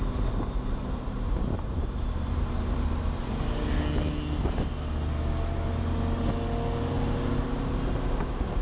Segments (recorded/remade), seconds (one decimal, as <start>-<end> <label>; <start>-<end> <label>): 0.0-3.7 remade; 3.7-8.6 recorded